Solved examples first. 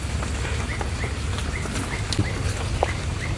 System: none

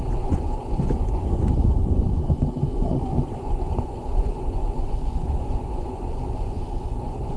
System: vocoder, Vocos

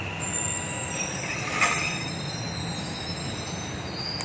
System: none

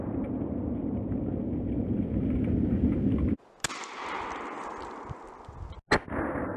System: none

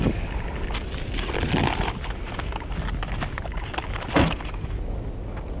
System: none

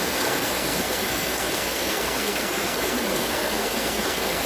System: codec, SNAC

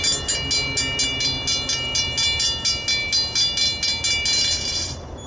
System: none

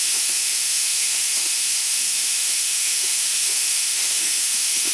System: autoencoder, DAC-VAE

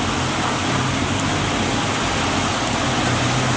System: none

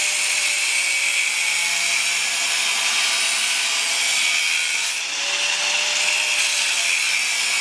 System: none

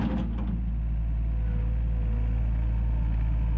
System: none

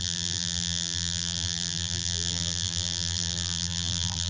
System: vocoder, BigVGAN v2